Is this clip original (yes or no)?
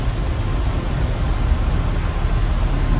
yes